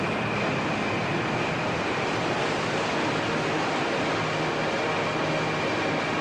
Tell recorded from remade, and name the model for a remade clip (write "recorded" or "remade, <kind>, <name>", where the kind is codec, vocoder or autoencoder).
recorded